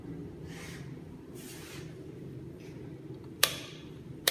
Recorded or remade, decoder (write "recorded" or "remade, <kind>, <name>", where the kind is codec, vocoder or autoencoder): remade, vocoder, BigVGAN v2